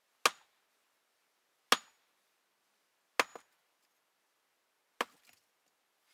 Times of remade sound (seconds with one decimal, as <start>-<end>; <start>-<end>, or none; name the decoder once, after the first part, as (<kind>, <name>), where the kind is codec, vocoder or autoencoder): none